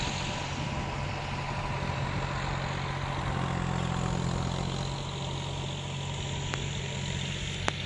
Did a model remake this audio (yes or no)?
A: no